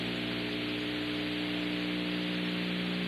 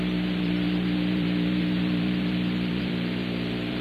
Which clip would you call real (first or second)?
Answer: first